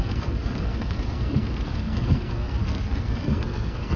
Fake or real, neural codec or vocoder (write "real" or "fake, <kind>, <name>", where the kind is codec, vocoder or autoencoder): fake, codec, SNAC